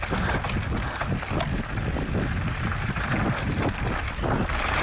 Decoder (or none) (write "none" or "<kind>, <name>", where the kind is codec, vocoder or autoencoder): none